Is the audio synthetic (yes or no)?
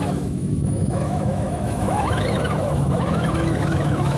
yes